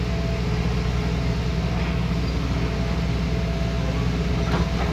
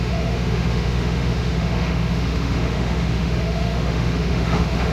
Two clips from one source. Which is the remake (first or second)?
second